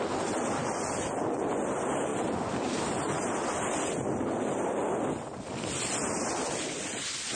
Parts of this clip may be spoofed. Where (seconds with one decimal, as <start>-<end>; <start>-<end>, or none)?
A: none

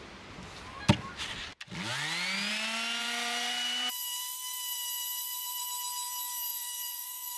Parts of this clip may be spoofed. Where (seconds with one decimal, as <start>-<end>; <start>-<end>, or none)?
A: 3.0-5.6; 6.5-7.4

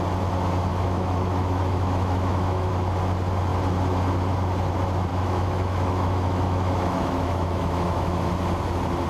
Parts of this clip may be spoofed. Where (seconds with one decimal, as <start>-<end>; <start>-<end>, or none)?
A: 0.7-2.7; 5.1-8.3

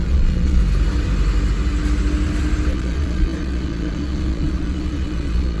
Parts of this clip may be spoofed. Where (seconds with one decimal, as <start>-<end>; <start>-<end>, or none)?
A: 0.0-0.6; 2.7-5.6

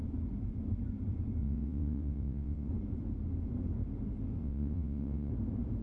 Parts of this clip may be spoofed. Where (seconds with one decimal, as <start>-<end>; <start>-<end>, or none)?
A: 1.4-2.7; 4.4-5.3

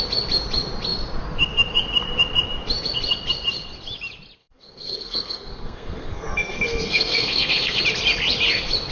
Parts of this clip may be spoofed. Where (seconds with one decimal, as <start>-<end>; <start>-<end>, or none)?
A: 4.4-7.8

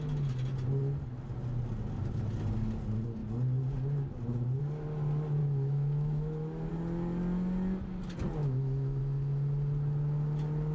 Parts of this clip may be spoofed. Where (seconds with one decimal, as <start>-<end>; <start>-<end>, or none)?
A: 5.4-6.7; 8.4-9.0

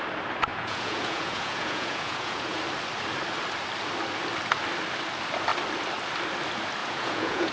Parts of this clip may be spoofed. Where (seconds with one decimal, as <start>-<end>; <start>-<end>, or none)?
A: 0.5-2.6; 6.8-7.5